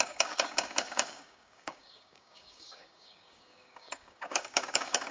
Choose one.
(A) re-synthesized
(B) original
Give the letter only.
A